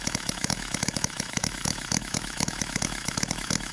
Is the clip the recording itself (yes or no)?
no